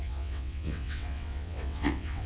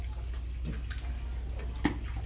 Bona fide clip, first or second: second